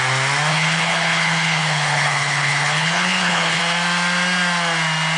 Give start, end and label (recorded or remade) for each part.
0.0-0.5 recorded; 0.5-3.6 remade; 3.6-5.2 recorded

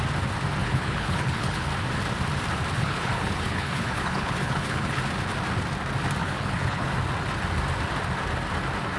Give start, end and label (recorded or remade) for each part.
0.0-0.6 recorded; 0.6-1.7 remade; 1.7-2.8 recorded; 2.8-5.0 remade; 5.0-6.2 recorded; 6.2-6.9 remade; 6.9-9.0 recorded

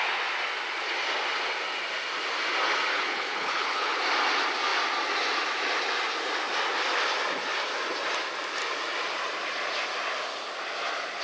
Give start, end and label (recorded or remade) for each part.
0.0-2.9 recorded; 2.9-4.0 remade; 4.0-11.2 recorded

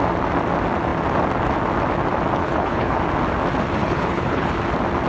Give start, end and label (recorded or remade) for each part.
0.0-2.4 recorded; 2.4-3.0 remade; 3.0-3.8 recorded; 3.8-4.5 remade; 4.5-5.1 recorded